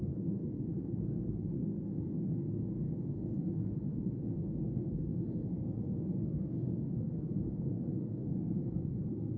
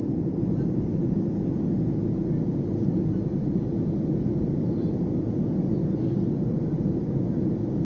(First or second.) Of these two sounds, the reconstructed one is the first